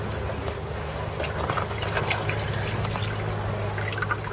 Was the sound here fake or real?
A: real